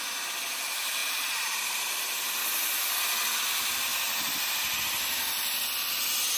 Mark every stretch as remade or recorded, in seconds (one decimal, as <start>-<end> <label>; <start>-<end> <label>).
0.0-6.4 recorded